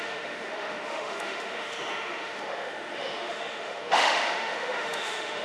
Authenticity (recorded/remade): remade